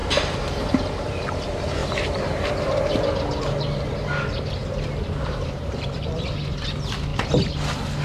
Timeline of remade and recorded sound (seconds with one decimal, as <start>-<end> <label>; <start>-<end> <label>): 0.0-0.9 remade; 0.9-1.8 recorded; 1.8-2.9 remade; 2.9-4.6 recorded; 4.6-6.1 remade; 6.1-8.0 recorded